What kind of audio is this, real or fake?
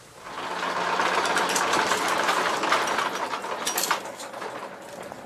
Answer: real